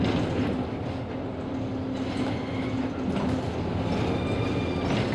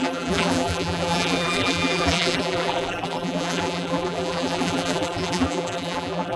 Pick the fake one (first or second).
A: second